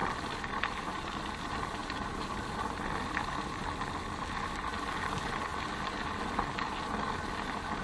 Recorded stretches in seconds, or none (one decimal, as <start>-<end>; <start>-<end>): 0.0-7.8